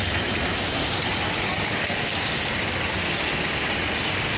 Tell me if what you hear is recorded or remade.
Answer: recorded